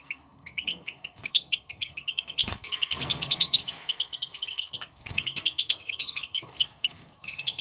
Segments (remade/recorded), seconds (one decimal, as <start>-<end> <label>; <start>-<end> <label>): 0.0-7.6 remade